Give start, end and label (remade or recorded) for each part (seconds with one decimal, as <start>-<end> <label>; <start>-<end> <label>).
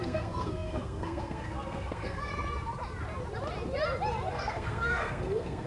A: 0.0-2.3 remade; 2.3-4.3 recorded; 4.3-5.7 remade